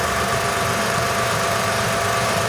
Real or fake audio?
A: fake